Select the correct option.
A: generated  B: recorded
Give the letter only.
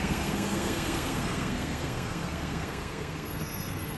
A